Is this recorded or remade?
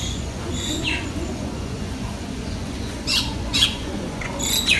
remade